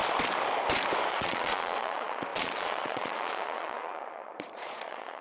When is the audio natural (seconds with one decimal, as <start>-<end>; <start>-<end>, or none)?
0.0-1.1